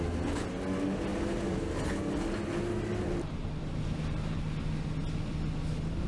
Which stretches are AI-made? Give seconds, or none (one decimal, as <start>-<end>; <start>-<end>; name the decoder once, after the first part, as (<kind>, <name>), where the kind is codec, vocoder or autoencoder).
none